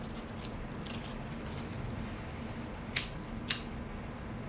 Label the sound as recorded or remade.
recorded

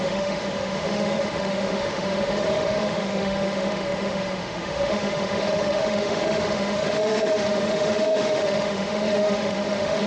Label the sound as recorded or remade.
remade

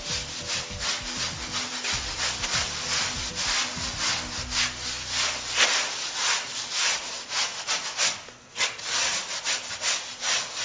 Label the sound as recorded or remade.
recorded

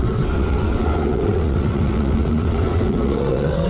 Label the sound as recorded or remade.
remade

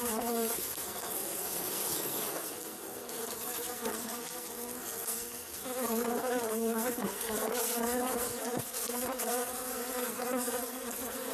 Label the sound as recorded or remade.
remade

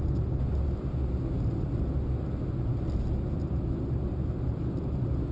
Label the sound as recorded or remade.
recorded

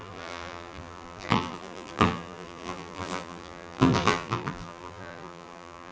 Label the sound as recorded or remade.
remade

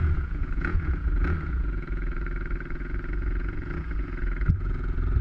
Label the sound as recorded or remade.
remade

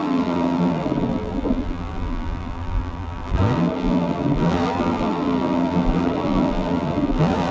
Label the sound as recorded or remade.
remade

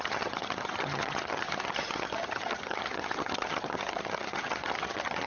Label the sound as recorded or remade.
remade